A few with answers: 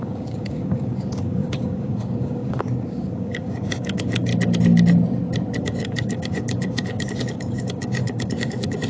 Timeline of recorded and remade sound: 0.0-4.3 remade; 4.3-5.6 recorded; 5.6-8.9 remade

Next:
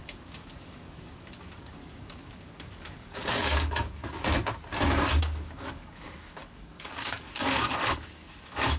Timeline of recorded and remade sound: 0.0-4.0 remade; 4.0-5.2 recorded; 5.2-8.8 remade

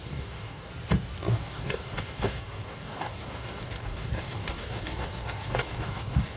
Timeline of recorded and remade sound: 0.0-0.7 remade; 0.7-1.3 recorded; 1.3-6.4 remade

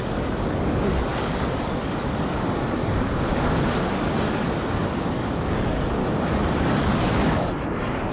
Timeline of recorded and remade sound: 0.0-2.8 remade; 2.8-4.9 recorded; 4.9-6.0 remade; 6.0-6.5 recorded; 6.5-8.1 remade

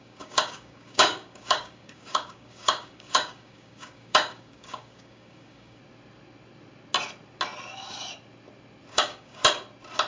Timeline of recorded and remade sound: 0.0-5.8 remade; 5.8-8.9 recorded; 8.9-9.4 remade; 9.4-10.1 recorded